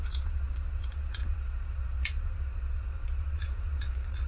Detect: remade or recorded remade